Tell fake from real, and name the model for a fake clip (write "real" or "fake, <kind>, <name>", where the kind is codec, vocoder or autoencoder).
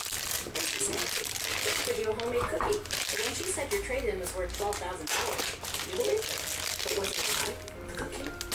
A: real